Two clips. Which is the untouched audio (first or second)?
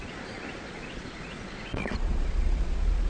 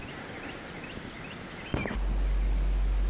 second